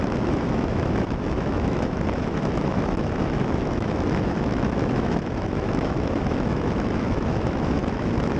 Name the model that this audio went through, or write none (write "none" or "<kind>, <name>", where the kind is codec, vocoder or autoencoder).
autoencoder, DAC-VAE